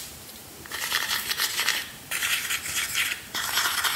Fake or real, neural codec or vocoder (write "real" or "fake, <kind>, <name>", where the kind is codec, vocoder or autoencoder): fake, vocoder, BigVGAN v2